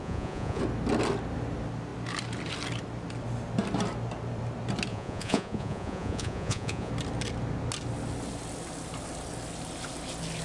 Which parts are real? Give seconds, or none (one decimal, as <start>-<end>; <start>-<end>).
0.6-4.9; 6.9-10.4

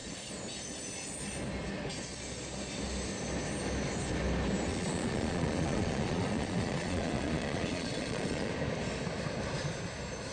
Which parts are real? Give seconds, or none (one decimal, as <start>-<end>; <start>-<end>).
0.0-4.7; 8.5-10.3

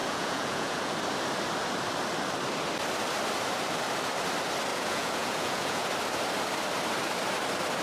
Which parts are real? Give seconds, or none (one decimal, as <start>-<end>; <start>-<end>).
0.9-4.7; 5.9-7.8

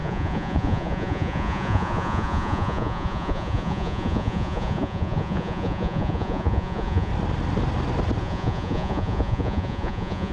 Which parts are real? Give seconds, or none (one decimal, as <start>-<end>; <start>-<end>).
7.1-8.2

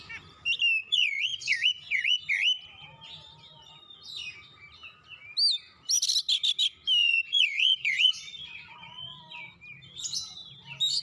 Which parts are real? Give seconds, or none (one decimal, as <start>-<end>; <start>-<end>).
0.0-0.8; 2.2-7.0; 9.2-11.0

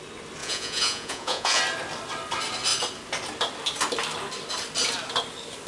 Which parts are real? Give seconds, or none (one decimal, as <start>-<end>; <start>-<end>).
0.0-0.4; 1.6-5.7

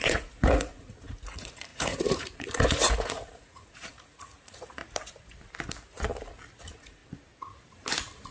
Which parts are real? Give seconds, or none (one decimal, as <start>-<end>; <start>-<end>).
4.8-6.6; 7.0-8.3